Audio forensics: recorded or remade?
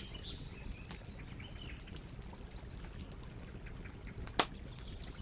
recorded